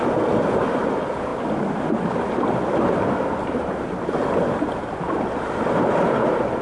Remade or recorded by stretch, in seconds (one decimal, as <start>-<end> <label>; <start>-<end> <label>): 0.0-6.6 recorded